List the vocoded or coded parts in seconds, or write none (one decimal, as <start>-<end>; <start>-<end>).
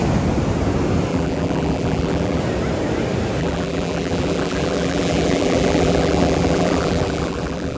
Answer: 1.1-2.4; 3.4-7.8